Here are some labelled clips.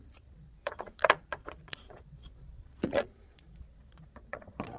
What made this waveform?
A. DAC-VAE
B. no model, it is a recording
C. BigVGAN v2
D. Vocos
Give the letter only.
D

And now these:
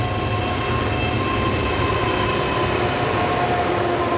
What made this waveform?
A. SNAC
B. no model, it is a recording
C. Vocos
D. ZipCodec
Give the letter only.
B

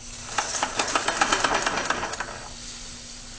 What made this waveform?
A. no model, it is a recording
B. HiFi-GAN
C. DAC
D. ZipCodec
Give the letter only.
A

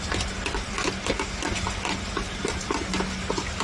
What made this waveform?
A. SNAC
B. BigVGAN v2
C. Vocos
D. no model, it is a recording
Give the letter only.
D